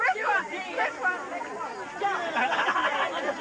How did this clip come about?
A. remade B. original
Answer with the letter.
B